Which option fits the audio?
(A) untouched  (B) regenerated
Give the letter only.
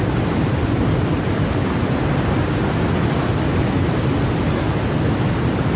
A